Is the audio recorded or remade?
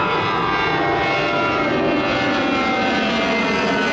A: recorded